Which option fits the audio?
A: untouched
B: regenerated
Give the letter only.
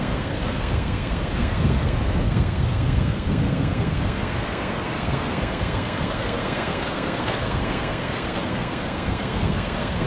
B